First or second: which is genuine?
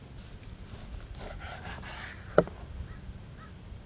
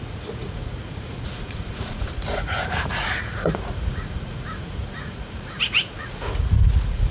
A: first